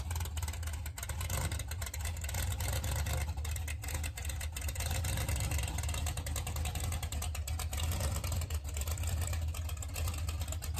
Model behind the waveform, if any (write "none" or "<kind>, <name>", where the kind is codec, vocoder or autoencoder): none